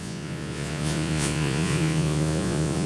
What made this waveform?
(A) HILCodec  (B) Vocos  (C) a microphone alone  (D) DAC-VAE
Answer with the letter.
B